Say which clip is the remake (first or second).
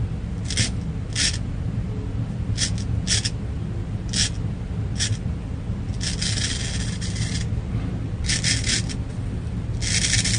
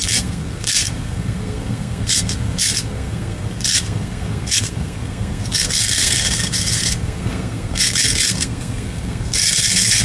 second